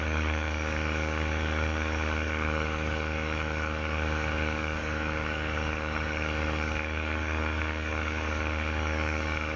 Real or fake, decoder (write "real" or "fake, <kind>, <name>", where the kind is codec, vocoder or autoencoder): fake, codec, DAC